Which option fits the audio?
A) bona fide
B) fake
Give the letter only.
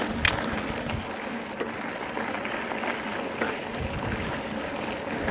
A